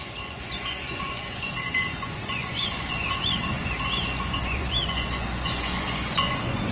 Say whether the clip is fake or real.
fake